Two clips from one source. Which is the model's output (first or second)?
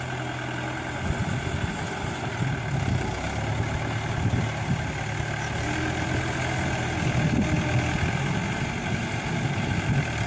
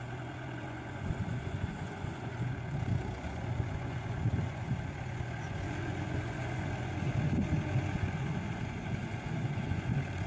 second